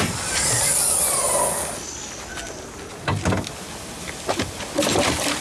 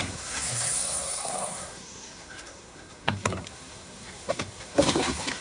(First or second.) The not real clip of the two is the second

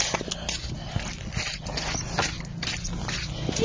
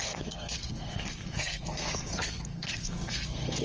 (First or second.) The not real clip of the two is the second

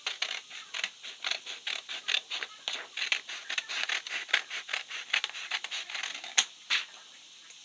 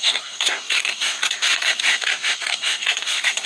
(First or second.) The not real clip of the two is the second